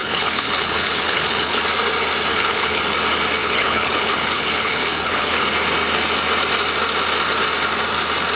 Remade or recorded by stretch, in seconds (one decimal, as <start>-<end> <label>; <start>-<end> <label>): 0.0-1.6 remade; 1.6-2.3 recorded; 2.3-2.8 remade; 2.8-3.4 recorded; 3.4-5.5 remade; 5.5-8.4 recorded

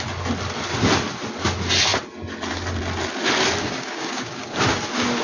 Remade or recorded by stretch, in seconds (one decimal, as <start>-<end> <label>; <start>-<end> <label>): 0.0-3.6 recorded; 3.6-4.6 remade; 4.6-5.2 recorded

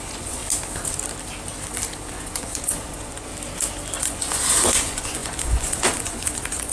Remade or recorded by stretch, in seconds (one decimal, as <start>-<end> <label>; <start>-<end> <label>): 0.0-0.4 remade; 0.4-2.1 recorded; 2.1-3.3 remade; 3.3-4.0 recorded; 4.0-6.7 remade